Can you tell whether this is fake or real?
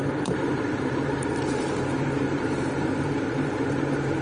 fake